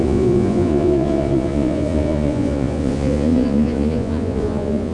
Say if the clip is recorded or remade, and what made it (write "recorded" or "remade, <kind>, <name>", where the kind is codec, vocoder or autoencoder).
remade, vocoder, Vocos